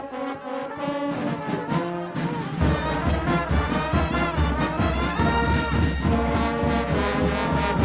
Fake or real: real